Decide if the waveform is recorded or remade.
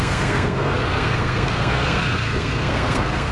remade